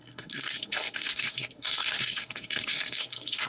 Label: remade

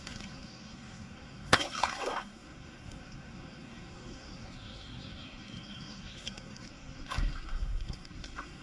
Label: remade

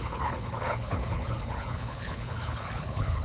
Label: remade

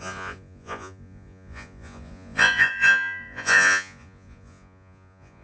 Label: remade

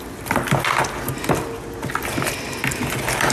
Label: recorded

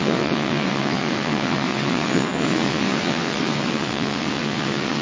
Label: remade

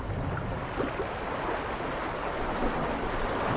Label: recorded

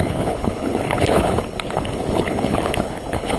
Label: remade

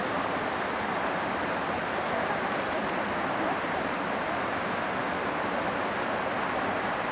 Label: recorded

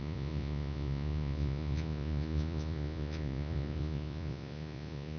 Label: remade